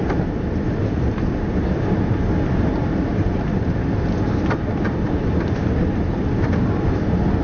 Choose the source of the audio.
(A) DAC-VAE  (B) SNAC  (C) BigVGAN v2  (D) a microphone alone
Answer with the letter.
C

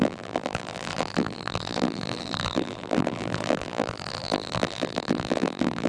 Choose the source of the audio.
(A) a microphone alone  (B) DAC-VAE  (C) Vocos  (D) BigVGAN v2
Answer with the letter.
D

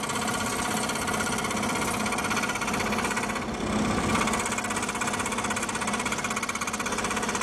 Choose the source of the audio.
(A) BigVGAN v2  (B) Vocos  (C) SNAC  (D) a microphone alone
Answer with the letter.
D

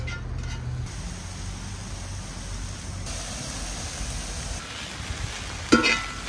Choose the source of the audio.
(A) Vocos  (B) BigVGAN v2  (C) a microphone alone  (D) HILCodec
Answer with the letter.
C